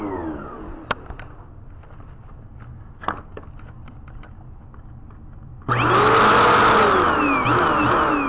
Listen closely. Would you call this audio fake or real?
real